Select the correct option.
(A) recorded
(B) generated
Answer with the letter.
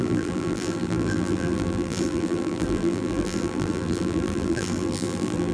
B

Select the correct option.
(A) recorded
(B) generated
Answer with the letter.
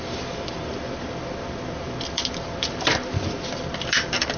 B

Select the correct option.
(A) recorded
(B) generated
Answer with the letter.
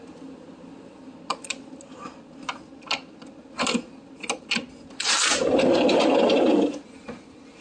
A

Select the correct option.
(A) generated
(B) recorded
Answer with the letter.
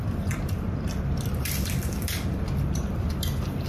A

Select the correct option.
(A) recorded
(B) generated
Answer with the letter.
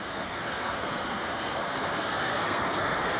B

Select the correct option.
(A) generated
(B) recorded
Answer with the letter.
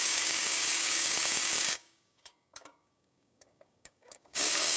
A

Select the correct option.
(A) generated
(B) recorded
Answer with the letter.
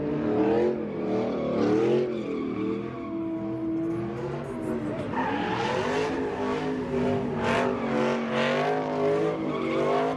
B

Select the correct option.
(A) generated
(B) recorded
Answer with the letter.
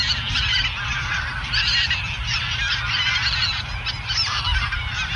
B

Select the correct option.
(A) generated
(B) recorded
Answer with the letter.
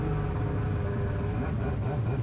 B